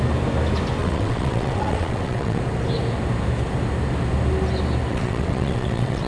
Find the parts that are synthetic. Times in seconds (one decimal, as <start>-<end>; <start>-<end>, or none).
0.8-2.4; 4.9-6.1